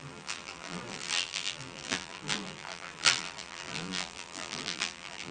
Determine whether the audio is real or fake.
fake